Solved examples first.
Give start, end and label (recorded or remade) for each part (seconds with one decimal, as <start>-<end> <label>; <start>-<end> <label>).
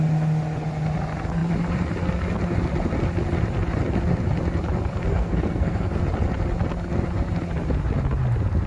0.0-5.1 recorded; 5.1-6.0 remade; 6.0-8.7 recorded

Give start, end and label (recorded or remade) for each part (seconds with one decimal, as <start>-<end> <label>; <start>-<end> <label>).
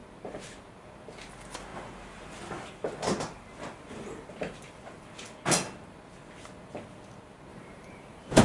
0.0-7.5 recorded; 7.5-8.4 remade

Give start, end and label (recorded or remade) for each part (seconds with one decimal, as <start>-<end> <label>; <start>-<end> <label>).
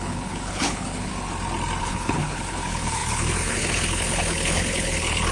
0.0-1.1 remade; 1.1-1.8 recorded; 1.8-5.3 remade